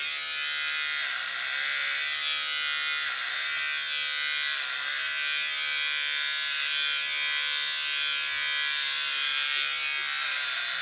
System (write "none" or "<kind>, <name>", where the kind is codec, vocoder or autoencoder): none